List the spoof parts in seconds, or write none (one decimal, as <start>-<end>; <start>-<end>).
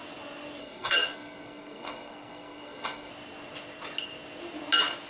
0.6-3.1